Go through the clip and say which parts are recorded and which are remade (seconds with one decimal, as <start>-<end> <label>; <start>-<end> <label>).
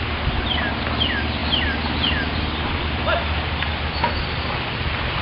0.0-5.2 recorded